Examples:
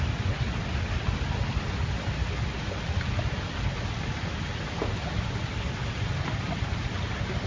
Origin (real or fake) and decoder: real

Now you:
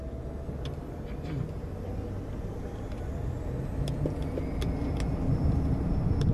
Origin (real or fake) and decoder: real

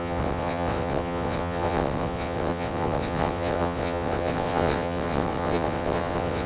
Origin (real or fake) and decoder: fake, vocoder, WaveNeXt